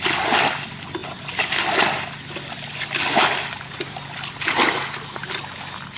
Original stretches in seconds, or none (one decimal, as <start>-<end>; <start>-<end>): 0.0-6.0